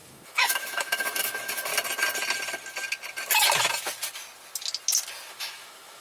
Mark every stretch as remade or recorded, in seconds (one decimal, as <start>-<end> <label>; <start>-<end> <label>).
0.0-1.7 remade; 1.7-5.3 recorded; 5.3-6.0 remade